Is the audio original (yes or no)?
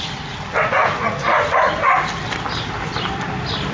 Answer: yes